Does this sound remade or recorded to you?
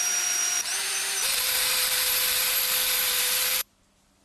remade